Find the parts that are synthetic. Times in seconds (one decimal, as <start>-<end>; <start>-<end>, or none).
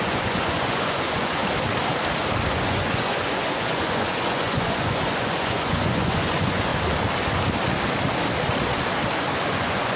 0.0-1.4; 2.5-6.7; 9.5-10.0